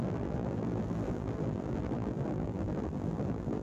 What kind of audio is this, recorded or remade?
remade